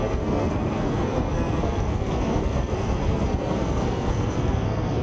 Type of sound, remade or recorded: remade